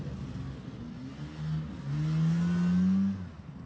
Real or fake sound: real